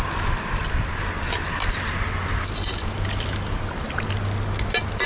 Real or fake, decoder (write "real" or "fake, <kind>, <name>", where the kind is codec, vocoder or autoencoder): real